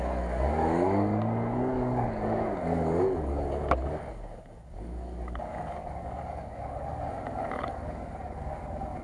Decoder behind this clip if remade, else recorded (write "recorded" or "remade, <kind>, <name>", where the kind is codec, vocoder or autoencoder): remade, codec, DAC